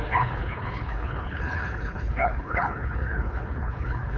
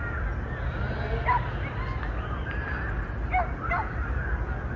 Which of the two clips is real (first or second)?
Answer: second